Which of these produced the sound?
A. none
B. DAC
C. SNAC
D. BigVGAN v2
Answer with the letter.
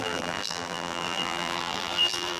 D